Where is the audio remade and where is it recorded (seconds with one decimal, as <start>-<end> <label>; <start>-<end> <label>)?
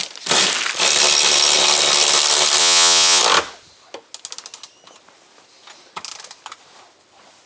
0.0-2.6 recorded; 2.6-3.2 remade; 3.2-7.5 recorded